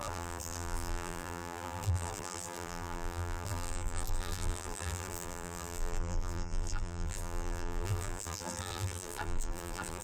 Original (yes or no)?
no